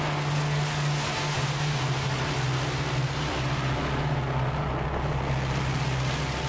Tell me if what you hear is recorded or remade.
recorded